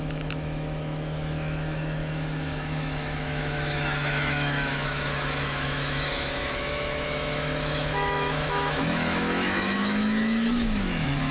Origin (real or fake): fake